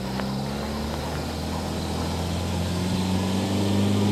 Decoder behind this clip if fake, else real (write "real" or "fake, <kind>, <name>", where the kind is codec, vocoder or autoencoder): real